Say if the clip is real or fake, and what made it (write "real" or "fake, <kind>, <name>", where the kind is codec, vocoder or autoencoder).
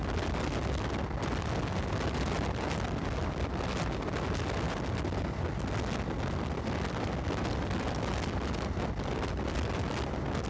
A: real